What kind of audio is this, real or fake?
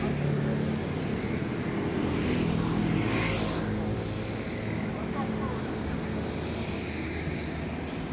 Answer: real